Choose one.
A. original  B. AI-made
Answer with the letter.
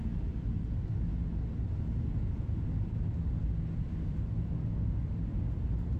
A